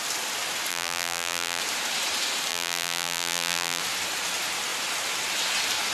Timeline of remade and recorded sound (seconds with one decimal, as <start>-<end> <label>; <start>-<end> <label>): 0.0-0.7 recorded; 0.7-1.6 remade; 1.6-2.5 recorded; 2.5-3.8 remade; 3.8-5.9 recorded